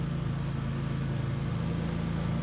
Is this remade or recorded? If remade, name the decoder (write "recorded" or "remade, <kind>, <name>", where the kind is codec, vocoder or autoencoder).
recorded